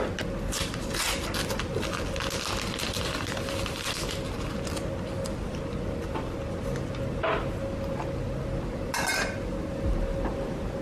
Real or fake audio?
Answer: real